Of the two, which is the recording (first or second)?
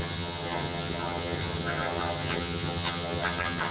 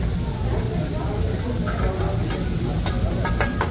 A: second